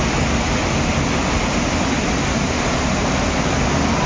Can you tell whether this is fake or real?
real